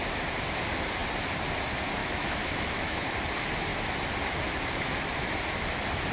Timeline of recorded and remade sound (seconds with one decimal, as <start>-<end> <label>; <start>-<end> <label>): 0.0-2.0 recorded; 2.0-3.1 remade; 3.1-6.1 recorded